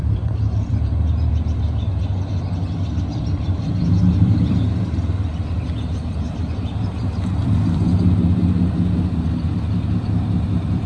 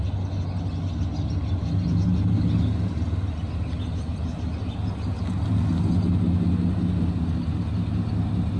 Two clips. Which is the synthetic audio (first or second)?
first